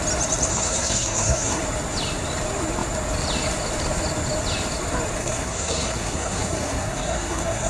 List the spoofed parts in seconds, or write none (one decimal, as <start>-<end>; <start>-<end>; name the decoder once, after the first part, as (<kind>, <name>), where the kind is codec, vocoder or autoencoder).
0.5-1.6 (codec, SNAC); 5.2-7.7